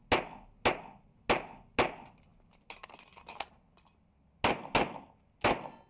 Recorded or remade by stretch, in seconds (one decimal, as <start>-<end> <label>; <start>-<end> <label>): 0.0-5.9 recorded